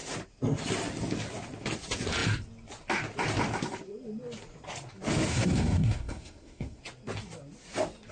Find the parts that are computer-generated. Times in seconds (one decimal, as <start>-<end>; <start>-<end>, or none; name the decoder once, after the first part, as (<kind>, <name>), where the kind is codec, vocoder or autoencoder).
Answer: 5.3-6.8 (codec, SNAC)